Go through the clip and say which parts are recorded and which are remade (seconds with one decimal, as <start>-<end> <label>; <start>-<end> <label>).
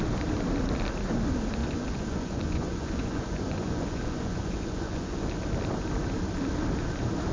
0.0-1.6 recorded; 1.6-5.3 remade; 5.3-7.3 recorded